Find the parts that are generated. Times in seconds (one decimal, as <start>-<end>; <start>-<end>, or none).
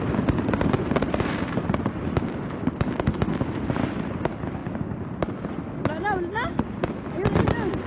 none